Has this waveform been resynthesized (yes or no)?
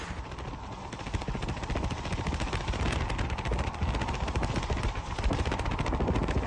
no